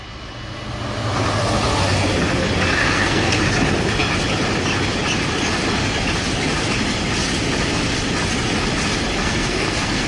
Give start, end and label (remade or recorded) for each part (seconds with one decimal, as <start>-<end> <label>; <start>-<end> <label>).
0.0-2.8 recorded; 2.8-3.4 remade; 3.4-9.2 recorded; 9.2-10.1 remade